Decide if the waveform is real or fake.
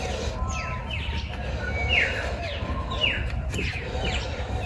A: real